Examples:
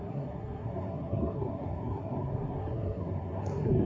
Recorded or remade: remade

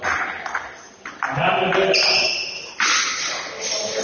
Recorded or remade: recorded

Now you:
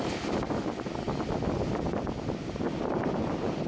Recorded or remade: recorded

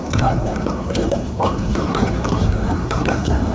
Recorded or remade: remade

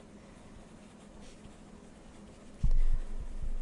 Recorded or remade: recorded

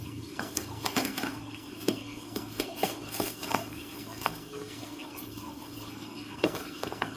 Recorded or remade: remade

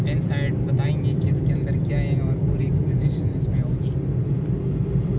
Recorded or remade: recorded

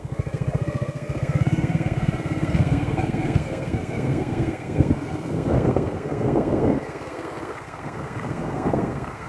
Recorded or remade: remade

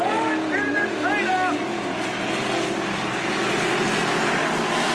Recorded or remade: recorded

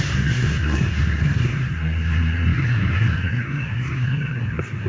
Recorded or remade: remade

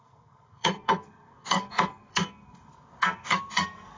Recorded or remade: remade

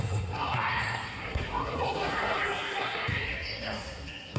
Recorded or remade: remade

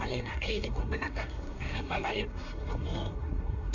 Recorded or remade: remade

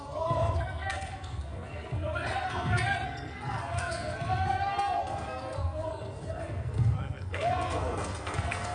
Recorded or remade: remade